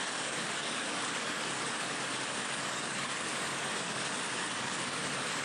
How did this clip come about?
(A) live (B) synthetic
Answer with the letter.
B